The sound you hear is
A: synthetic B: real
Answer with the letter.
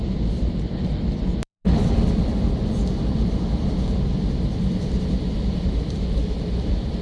A